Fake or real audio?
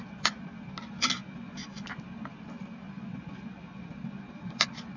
real